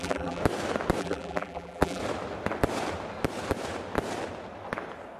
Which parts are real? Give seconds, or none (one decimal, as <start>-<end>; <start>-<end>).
0.4-1.0; 2.0-5.2